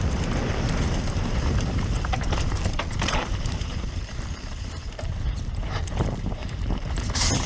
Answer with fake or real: fake